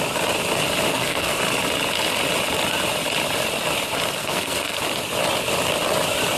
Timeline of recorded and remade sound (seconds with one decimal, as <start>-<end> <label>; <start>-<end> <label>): 0.0-0.9 recorded; 0.9-1.4 remade; 1.4-4.2 recorded; 4.2-4.8 remade; 4.8-6.4 recorded

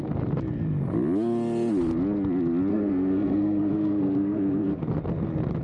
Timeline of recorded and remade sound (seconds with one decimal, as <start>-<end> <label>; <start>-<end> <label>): 0.0-2.7 recorded; 2.7-4.8 remade; 4.8-5.6 recorded

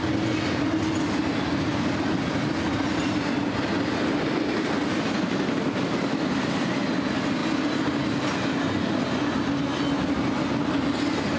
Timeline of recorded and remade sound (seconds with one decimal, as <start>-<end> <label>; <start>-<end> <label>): 0.0-11.4 recorded

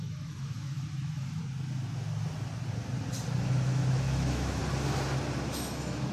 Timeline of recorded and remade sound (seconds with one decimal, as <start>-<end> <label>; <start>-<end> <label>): 0.0-1.4 remade; 1.4-3.3 recorded; 3.3-4.6 remade; 4.6-5.5 recorded; 5.5-6.1 remade

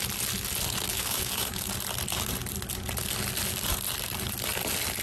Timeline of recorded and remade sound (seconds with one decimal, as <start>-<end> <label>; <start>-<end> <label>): 0.0-0.9 recorded; 0.9-1.7 remade; 1.7-5.0 recorded

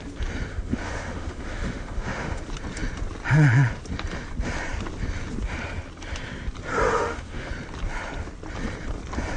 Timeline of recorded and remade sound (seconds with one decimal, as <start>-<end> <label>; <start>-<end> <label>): 0.0-0.5 recorded; 0.5-2.4 remade; 2.4-6.9 recorded; 6.9-7.5 remade; 7.5-9.4 recorded

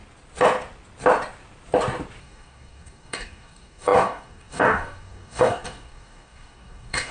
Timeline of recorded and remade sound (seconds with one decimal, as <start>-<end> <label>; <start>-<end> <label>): 0.0-2.2 recorded; 2.2-7.1 remade